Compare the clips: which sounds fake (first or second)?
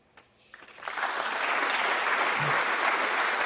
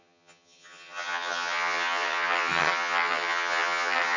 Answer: second